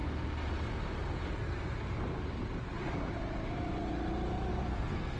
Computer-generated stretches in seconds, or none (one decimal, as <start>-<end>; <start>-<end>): 4.5-5.2

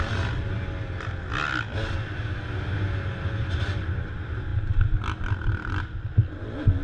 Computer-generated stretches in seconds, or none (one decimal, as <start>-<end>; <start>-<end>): none

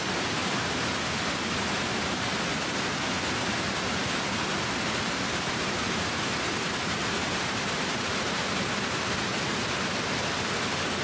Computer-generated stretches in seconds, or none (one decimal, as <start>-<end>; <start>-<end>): 0.4-1.1; 5.3-8.7

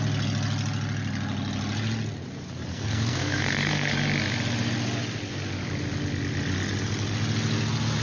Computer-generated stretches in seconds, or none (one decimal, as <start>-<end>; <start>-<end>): 2.7-3.9

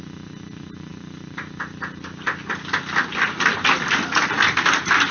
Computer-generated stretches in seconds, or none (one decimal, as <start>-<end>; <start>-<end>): none

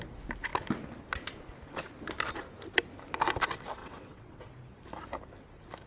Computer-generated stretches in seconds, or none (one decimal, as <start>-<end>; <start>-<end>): 3.8-4.4

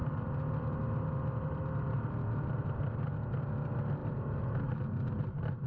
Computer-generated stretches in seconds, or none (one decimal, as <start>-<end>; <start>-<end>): none